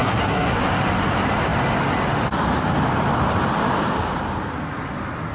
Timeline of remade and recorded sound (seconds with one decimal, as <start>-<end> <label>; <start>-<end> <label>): 0.0-0.6 remade; 0.6-5.3 recorded